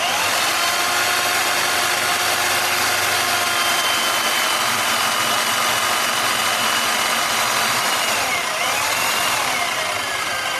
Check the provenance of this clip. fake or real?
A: real